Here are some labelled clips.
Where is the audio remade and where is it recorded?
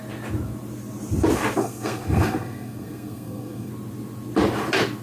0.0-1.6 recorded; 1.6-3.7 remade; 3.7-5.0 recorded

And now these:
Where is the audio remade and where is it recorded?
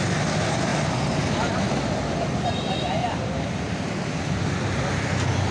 0.0-3.0 recorded; 3.0-4.9 remade; 4.9-5.5 recorded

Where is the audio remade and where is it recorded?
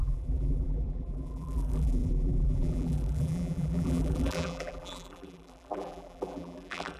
0.0-7.0 remade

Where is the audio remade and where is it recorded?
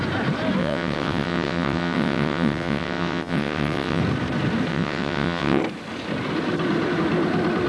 0.0-0.6 recorded; 0.6-4.0 remade; 4.0-4.7 recorded; 4.7-5.6 remade; 5.6-7.7 recorded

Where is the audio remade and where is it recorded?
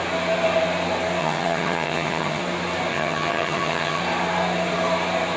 0.0-1.2 recorded; 1.2-2.4 remade; 2.4-2.9 recorded; 2.9-4.0 remade; 4.0-5.4 recorded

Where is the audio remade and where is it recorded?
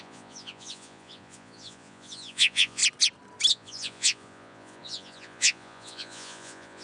0.0-2.8 remade; 2.8-3.5 recorded; 3.5-6.8 remade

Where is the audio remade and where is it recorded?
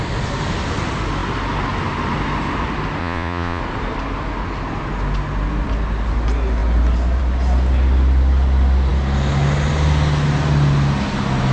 0.0-3.0 recorded; 3.0-3.6 remade; 3.6-11.5 recorded